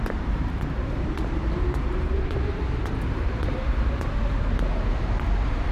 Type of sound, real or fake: fake